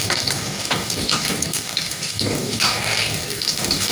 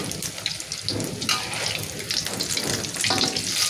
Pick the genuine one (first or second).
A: second